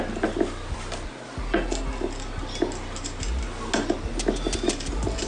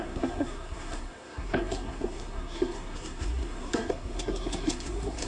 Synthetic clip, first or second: second